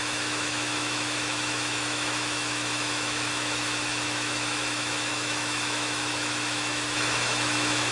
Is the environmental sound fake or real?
fake